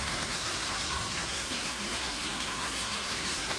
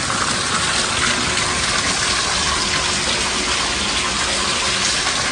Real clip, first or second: second